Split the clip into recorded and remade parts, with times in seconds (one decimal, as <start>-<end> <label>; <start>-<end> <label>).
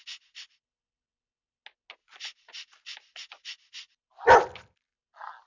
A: 0.0-2.0 recorded; 2.0-3.3 remade; 3.3-5.5 recorded